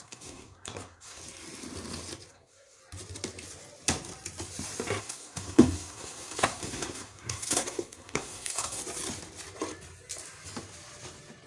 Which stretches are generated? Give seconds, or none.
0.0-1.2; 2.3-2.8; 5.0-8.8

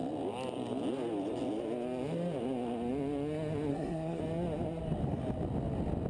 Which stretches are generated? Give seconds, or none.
3.7-4.2